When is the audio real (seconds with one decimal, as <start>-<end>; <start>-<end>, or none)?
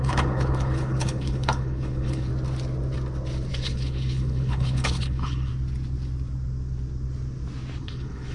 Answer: 2.3-3.5; 5.5-7.8